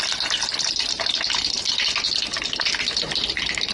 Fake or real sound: real